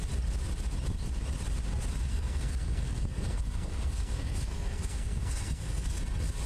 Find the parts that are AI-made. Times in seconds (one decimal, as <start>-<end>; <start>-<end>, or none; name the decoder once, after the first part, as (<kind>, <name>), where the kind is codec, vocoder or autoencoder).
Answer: 2.1-6.0 (codec, SNAC)